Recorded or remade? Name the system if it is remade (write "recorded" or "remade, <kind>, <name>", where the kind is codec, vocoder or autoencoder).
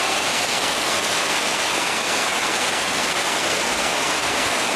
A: remade, codec, SNAC